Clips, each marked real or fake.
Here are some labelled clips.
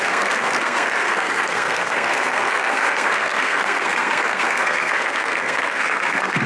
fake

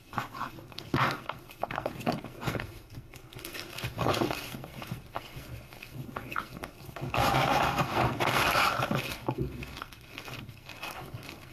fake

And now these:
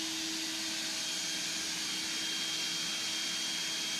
real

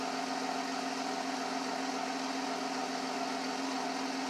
real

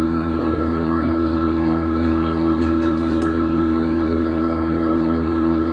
fake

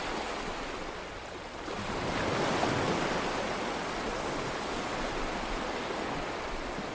real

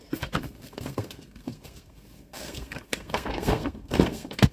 fake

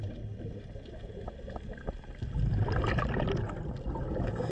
real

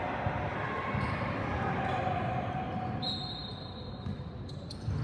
real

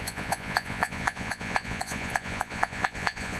fake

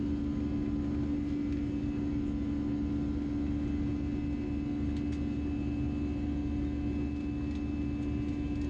real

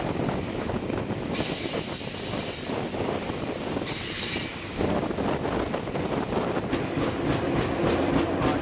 real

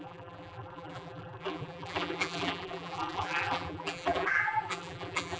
fake